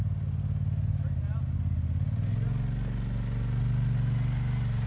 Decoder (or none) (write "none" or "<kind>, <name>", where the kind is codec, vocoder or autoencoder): none